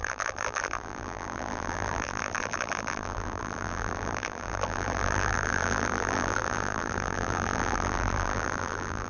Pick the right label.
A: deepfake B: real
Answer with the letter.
A